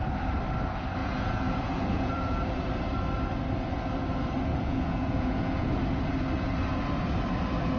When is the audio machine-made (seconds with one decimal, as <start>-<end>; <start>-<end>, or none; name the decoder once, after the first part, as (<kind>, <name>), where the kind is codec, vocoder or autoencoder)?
1.0-2.4 (vocoder, Vocos); 4.5-5.8